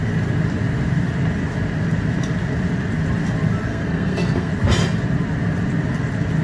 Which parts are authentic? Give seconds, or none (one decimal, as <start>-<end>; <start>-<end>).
0.0-3.7; 4.5-6.4